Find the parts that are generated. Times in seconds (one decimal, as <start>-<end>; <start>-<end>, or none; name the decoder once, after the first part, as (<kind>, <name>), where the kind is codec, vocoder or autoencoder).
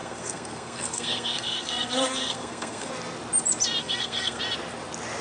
0.0-2.9 (codec, SNAC); 3.8-4.4